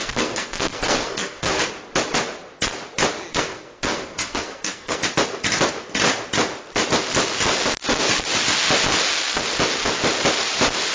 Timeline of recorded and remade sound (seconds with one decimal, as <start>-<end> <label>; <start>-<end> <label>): 0.0-1.7 remade; 1.7-3.3 recorded; 3.3-5.0 remade; 5.0-10.9 recorded